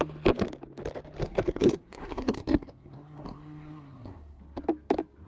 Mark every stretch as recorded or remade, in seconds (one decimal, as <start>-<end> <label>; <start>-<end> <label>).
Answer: 0.0-1.2 recorded; 1.2-4.4 remade; 4.4-5.3 recorded